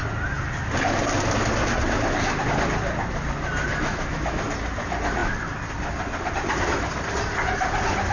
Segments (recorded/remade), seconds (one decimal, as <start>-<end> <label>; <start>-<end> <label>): 0.0-3.7 recorded; 3.7-4.4 remade; 4.4-8.1 recorded

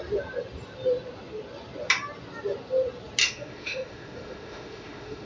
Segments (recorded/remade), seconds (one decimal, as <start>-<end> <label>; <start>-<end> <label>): 0.0-3.2 recorded; 3.2-5.3 remade

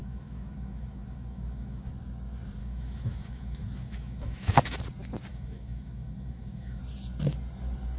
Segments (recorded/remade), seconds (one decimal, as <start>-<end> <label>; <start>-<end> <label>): 0.0-1.9 remade; 1.9-2.6 recorded; 2.6-4.8 remade; 4.8-5.3 recorded; 5.3-6.8 remade; 6.8-8.0 recorded

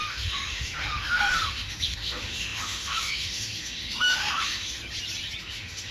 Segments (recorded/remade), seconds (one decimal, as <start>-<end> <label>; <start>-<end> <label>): 0.0-4.8 remade; 4.8-5.4 recorded; 5.4-5.9 remade